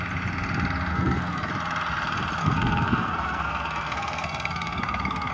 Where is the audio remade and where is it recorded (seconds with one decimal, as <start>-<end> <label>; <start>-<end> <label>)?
0.0-0.9 recorded; 0.9-1.5 remade; 1.5-2.4 recorded; 2.4-5.3 remade